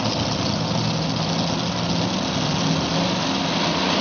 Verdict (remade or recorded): recorded